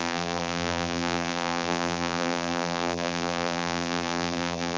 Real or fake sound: fake